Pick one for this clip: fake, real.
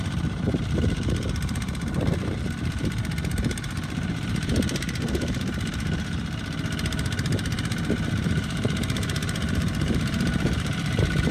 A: fake